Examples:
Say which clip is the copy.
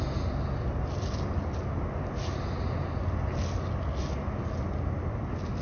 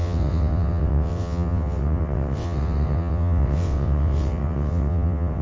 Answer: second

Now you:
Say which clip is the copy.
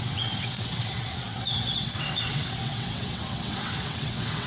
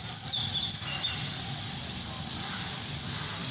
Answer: first